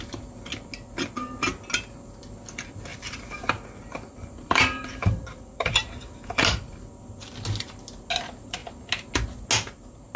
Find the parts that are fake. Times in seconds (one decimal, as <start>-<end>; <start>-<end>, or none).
2.9-6.9